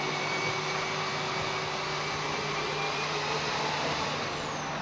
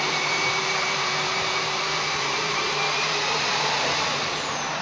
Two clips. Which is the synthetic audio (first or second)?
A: second